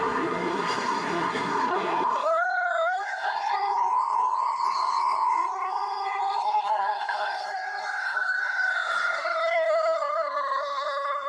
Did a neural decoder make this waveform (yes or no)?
yes